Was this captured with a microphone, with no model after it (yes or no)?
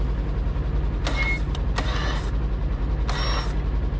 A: yes